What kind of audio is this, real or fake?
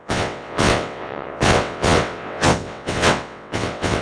fake